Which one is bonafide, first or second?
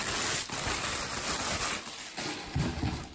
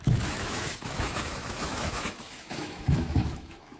first